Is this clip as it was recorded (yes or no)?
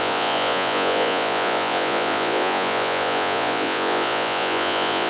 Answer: no